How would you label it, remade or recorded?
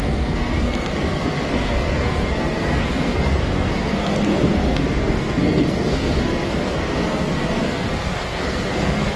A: remade